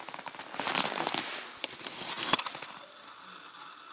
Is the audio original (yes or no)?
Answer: yes